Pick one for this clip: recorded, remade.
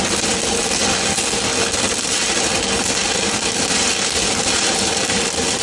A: recorded